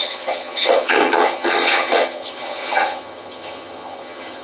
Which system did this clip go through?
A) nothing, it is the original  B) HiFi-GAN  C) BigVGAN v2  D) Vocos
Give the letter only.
B